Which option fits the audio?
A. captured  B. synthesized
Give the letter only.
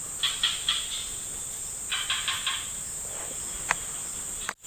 A